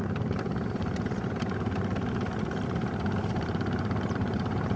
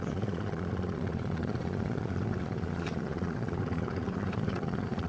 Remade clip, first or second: second